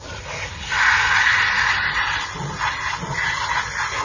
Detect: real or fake real